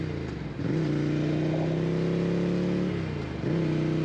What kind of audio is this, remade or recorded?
recorded